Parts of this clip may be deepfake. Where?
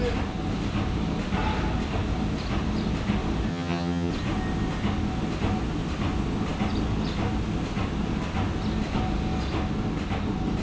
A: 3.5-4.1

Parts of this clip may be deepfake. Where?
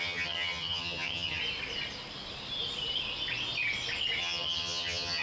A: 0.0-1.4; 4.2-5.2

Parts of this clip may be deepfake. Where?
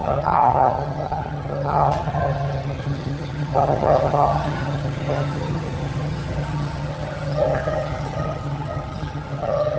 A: 0.0-9.8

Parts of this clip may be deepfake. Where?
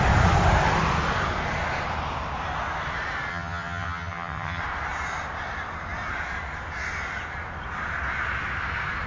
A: 3.3-4.6